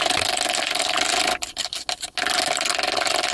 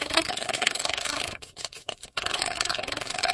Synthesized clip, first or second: second